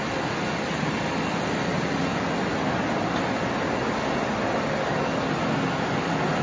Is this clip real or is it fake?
real